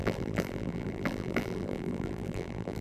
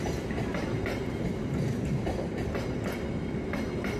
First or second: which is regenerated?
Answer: first